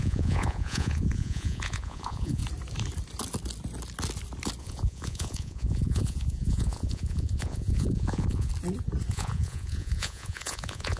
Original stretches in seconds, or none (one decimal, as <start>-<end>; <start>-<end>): 2.4-4.6; 8.5-9.1